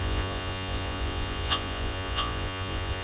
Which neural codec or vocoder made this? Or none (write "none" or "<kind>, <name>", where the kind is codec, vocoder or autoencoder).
vocoder, Vocos